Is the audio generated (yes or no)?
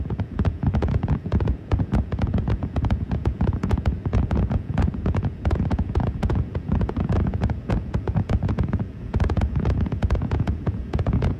yes